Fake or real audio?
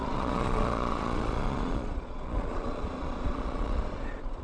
fake